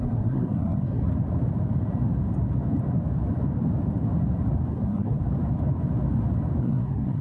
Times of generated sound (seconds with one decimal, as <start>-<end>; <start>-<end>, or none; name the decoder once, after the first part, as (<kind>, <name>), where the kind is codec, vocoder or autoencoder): 0.0-1.1 (codec, SNAC); 4.7-5.2; 6.6-7.2